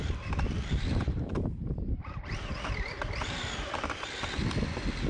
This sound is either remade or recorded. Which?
remade